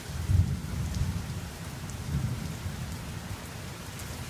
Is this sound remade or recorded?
remade